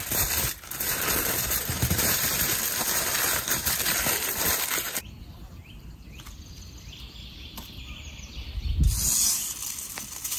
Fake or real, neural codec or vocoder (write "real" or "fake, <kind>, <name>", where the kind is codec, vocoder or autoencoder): real